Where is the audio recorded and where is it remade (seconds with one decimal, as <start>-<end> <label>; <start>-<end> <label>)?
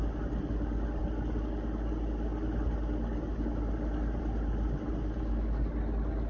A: 0.0-6.3 recorded